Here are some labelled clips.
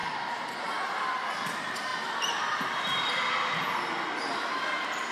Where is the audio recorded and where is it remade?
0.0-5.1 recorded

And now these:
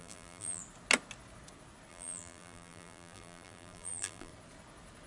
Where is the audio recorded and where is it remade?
0.0-0.6 remade; 0.6-1.9 recorded; 1.9-4.3 remade; 4.3-5.1 recorded

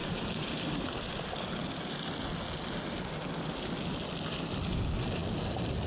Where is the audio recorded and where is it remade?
0.0-5.9 recorded

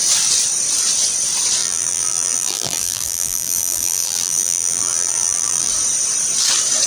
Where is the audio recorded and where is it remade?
0.0-1.6 recorded; 1.6-5.7 remade; 5.7-6.9 recorded

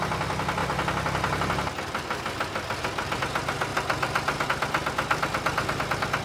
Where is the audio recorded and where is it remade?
0.0-0.6 recorded; 0.6-3.2 remade; 3.2-3.7 recorded; 3.7-4.5 remade; 4.5-6.2 recorded